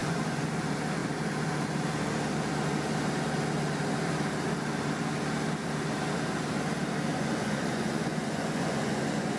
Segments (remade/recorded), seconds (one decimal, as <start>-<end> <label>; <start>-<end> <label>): 0.0-0.5 remade; 0.5-7.1 recorded; 7.1-9.4 remade